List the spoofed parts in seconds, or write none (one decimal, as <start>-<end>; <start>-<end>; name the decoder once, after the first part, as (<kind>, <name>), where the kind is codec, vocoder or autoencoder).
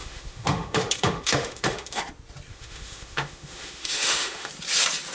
0.0-2.0 (autoencoder, DAC-VAE); 2.5-4.5